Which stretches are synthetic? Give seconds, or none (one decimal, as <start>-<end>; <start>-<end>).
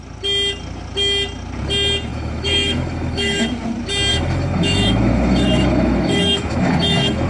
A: 2.1-3.5; 4.1-7.3